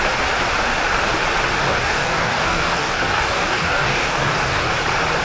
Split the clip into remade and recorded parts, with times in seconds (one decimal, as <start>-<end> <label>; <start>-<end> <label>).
0.0-1.6 recorded; 1.6-4.7 remade; 4.7-5.2 recorded